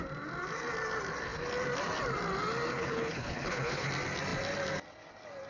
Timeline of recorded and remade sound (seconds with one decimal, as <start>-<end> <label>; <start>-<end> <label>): 0.0-2.7 recorded; 2.7-3.9 remade; 3.9-5.5 recorded